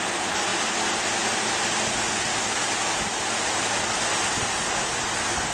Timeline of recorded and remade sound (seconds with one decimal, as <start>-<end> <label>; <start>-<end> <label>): 0.0-5.5 recorded